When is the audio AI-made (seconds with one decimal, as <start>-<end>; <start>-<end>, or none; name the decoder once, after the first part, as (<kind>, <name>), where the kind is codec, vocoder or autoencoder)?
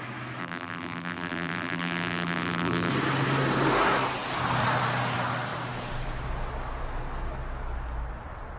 0.4-2.9 (vocoder, BigVGAN v2)